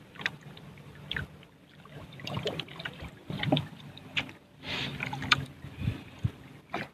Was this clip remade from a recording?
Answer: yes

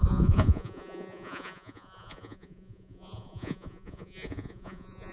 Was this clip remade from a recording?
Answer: yes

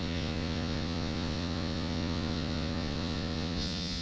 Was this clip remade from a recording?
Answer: yes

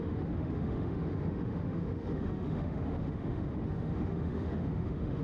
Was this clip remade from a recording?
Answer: yes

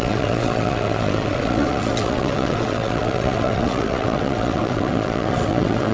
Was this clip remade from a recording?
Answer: yes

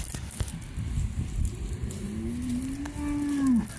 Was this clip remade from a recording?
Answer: no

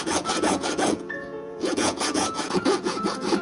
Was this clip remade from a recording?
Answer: yes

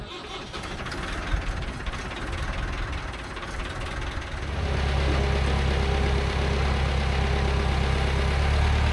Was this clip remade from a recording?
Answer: no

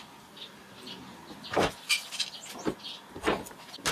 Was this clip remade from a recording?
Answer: no